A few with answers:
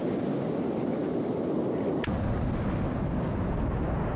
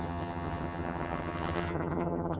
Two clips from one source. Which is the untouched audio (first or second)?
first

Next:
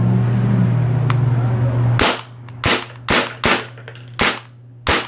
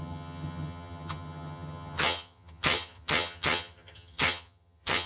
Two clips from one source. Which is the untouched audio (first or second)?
first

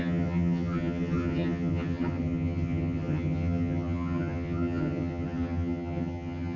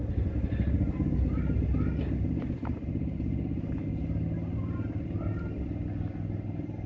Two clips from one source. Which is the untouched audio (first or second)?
second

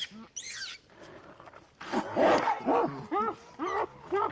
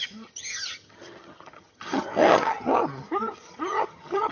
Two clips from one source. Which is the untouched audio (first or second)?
first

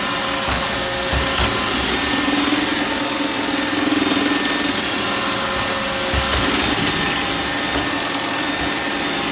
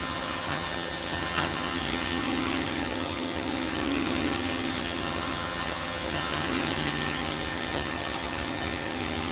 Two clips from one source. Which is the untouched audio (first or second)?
first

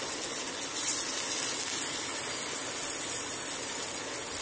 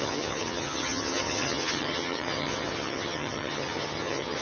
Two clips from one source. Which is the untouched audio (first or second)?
first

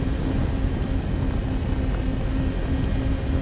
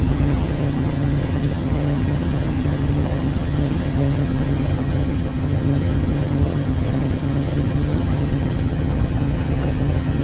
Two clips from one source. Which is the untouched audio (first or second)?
first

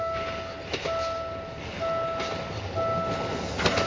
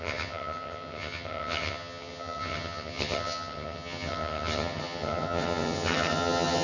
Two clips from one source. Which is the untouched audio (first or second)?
first